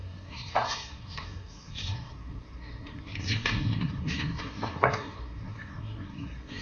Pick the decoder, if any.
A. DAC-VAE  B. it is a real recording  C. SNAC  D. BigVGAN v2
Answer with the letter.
C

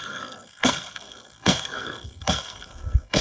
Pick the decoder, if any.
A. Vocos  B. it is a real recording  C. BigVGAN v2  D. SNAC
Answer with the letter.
D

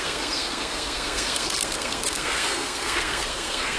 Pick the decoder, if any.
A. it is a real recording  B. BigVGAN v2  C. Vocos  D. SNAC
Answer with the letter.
D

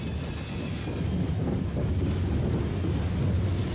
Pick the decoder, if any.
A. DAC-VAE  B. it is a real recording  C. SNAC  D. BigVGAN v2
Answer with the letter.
B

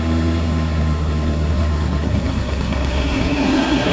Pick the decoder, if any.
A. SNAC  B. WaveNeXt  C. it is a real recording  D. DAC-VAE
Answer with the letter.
A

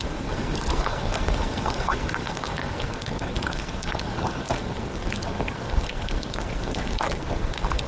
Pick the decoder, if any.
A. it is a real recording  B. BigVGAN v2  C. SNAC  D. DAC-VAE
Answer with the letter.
C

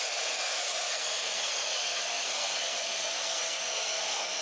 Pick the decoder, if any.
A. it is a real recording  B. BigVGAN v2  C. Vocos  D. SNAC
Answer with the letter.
D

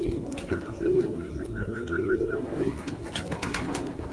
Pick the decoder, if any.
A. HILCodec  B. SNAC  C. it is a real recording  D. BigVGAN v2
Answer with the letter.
B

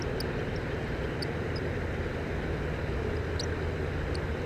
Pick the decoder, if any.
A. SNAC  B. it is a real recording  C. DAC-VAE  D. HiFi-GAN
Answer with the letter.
B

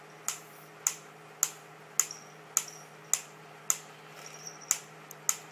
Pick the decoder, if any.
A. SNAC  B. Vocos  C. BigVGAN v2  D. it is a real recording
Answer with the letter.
D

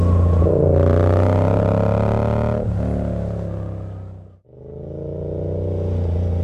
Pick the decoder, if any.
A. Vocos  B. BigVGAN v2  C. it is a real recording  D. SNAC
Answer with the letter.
C